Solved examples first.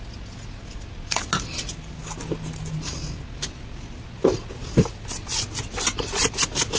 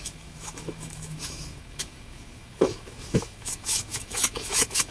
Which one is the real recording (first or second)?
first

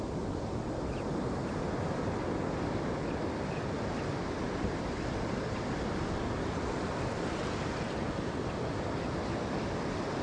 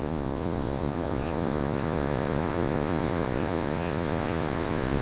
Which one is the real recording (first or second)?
first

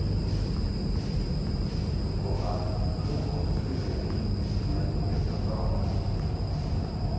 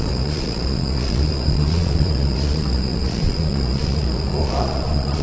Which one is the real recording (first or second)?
first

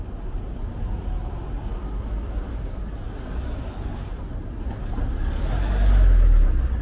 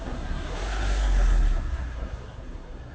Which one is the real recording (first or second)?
first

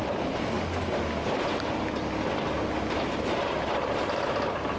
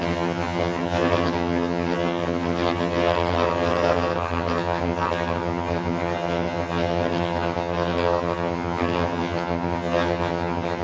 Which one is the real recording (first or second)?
first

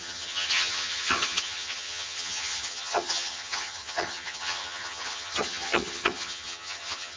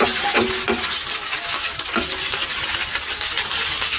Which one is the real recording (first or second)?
second